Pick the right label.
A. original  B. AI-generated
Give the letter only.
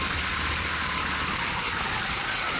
A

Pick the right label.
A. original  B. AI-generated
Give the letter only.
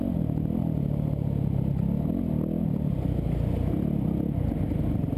A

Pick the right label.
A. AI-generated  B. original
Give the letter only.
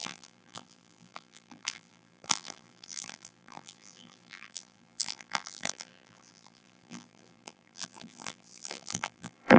A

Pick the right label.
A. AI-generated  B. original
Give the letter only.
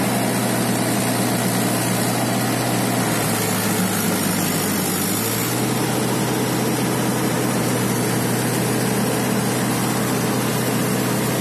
B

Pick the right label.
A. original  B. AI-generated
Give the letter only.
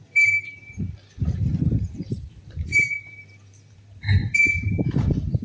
B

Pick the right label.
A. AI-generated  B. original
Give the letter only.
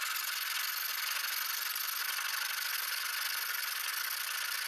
B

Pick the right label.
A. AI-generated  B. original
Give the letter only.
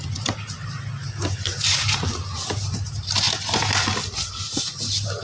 B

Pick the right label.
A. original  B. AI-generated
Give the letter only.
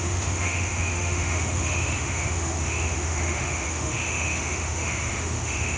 B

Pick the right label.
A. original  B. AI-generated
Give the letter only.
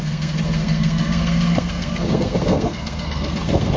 B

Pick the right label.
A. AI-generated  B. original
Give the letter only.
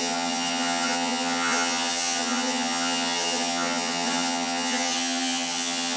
A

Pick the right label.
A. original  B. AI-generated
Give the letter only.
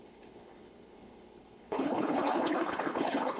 B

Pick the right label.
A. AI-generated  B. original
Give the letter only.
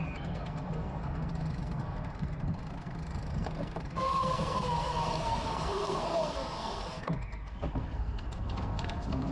A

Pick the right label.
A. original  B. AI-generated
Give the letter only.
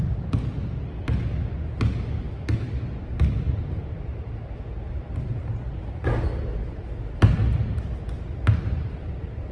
A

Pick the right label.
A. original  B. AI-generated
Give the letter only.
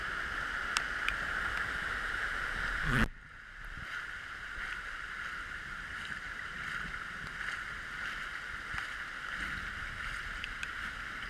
A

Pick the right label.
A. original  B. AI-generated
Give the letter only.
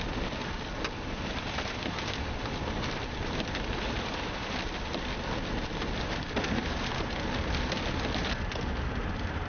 A